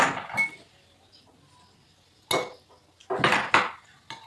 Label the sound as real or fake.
real